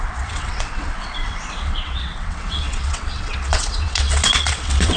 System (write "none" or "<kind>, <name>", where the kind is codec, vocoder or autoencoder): vocoder, WaveNeXt